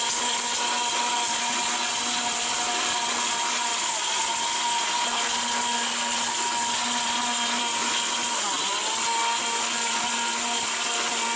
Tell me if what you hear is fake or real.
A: real